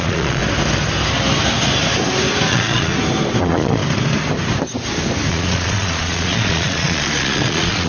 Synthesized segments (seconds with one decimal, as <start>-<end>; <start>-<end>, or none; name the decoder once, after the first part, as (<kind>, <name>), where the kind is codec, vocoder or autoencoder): 0.0-0.4 (vocoder, Vocos); 2.5-2.9; 3.4-3.8; 5.3-7.9